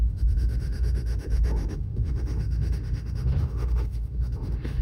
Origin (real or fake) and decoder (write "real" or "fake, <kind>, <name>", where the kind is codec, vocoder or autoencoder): fake, autoencoder, DAC-VAE